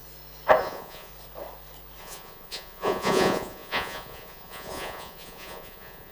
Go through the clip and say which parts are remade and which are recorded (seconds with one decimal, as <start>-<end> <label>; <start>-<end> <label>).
0.0-0.6 recorded; 0.6-1.1 remade; 1.1-2.0 recorded; 2.0-6.1 remade

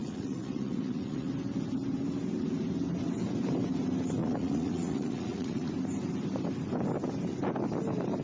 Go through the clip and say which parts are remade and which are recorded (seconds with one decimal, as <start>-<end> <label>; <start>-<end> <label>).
0.0-1.3 remade; 1.3-4.2 recorded; 4.2-5.7 remade; 5.7-8.2 recorded

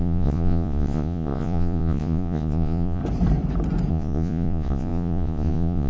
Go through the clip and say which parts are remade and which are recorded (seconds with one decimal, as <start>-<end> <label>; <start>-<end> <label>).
0.0-3.0 remade; 3.0-3.9 recorded; 3.9-5.9 remade

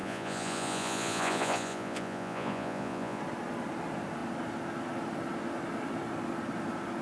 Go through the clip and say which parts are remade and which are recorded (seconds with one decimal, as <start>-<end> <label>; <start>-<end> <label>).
0.0-3.2 remade; 3.2-7.0 recorded

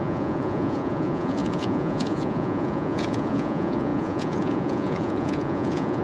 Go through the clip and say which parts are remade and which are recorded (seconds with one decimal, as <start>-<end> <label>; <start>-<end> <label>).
0.0-6.0 remade

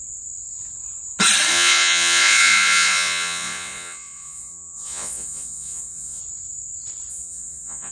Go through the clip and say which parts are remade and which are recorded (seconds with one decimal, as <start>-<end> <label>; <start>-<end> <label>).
0.0-1.5 recorded; 1.5-6.2 remade; 6.2-7.1 recorded; 7.1-7.9 remade